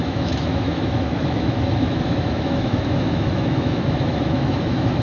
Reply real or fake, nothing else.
fake